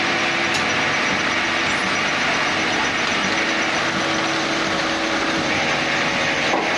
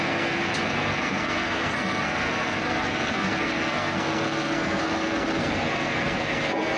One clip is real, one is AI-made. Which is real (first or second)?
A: first